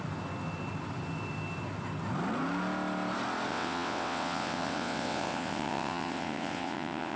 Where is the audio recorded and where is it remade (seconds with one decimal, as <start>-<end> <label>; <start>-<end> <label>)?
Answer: 0.0-3.5 recorded; 3.5-7.2 remade